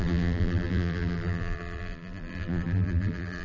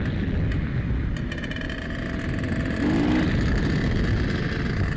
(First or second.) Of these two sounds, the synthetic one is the first